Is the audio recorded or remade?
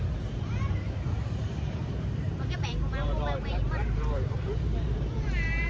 remade